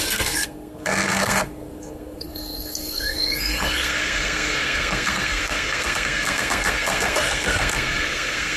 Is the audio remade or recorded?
remade